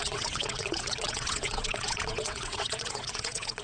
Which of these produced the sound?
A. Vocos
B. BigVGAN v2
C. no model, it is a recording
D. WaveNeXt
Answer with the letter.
D